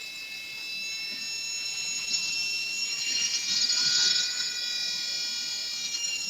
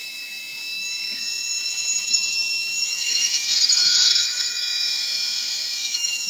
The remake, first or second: second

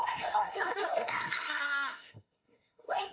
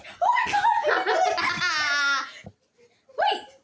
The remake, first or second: first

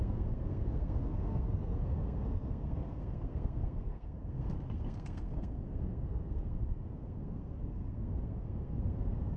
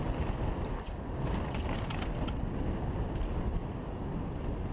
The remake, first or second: first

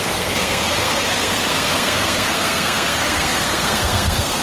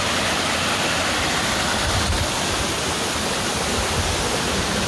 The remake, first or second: first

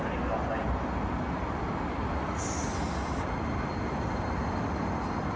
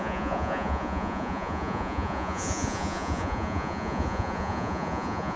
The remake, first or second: second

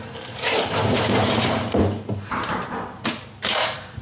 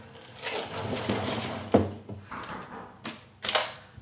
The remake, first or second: first